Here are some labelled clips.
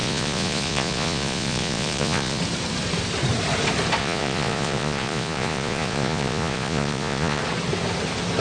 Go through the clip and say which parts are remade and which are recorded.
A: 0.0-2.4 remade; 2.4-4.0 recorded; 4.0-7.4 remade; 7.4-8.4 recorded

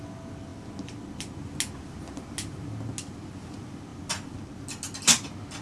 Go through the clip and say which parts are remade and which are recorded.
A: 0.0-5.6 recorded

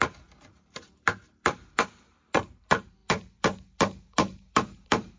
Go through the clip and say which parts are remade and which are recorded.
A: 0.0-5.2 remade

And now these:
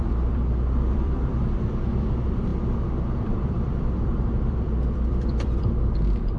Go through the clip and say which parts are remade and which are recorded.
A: 0.0-2.5 remade; 2.5-3.3 recorded; 3.3-6.4 remade